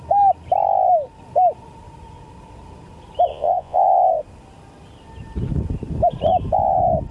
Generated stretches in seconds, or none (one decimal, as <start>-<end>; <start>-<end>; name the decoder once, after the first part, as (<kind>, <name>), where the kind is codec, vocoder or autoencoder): 3.3-4.1 (vocoder, Vocos)